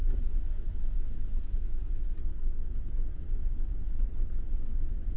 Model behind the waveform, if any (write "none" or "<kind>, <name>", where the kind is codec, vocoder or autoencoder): vocoder, WaveNeXt